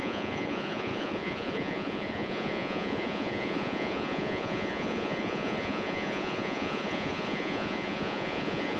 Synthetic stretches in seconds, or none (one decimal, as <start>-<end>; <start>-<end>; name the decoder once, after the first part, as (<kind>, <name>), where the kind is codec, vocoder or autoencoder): 0.0-8.8 (vocoder, Vocos)